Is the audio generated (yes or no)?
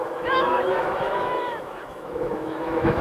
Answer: yes